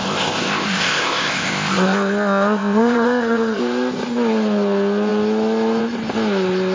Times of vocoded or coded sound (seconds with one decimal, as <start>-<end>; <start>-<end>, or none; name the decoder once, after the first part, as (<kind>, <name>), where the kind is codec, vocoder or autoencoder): 0.0-3.6 (codec, ZipCodec)